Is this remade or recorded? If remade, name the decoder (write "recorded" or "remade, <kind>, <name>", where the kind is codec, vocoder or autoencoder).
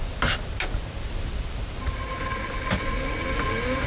recorded